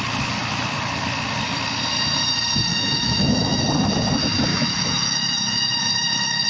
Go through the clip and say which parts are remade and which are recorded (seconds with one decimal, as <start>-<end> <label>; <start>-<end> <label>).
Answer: 0.0-2.7 recorded; 2.7-3.6 remade; 3.6-4.5 recorded; 4.5-6.5 remade